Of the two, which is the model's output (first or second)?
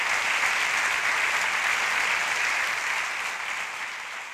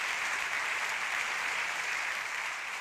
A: second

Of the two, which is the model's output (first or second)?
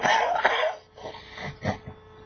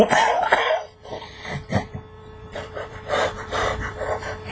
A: second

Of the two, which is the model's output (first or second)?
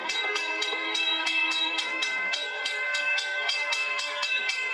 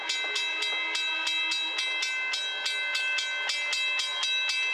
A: first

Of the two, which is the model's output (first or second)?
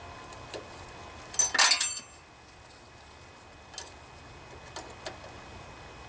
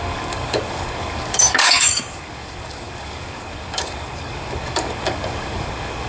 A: second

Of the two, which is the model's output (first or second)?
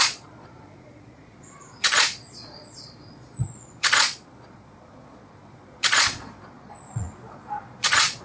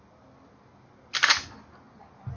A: first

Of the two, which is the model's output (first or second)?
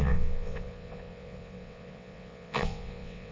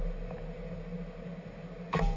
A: first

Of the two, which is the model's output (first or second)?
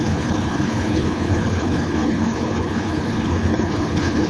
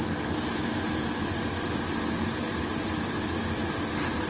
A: first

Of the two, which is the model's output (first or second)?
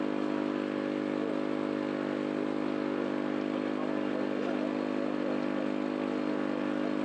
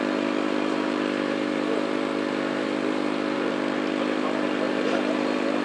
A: second